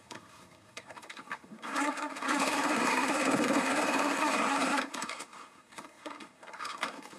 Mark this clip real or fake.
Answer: fake